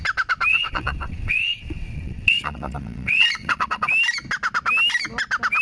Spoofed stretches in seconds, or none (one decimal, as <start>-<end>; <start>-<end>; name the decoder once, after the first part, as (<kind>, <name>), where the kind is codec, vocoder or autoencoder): 0.5-3.9 (vocoder, WaveNeXt)